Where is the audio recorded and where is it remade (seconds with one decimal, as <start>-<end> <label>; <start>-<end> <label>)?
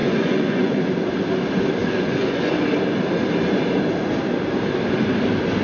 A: 0.0-0.7 remade; 0.7-1.8 recorded; 1.8-2.5 remade; 2.5-5.6 recorded